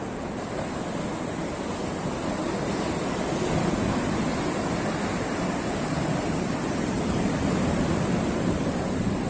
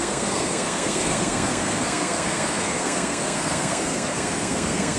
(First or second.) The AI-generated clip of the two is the second